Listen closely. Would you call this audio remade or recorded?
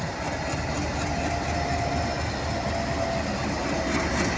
recorded